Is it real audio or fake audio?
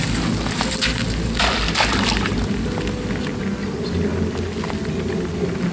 real